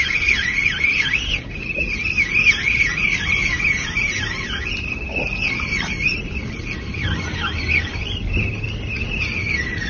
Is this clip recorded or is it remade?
recorded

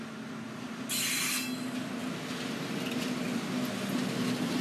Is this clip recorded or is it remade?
recorded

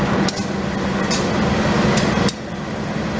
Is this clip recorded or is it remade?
recorded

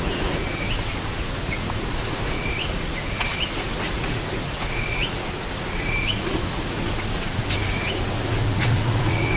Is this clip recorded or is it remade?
remade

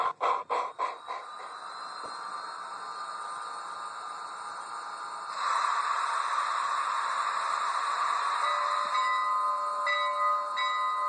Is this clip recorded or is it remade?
recorded